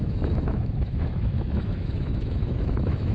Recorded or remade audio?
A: remade